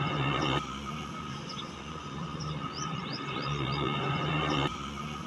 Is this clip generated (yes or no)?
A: yes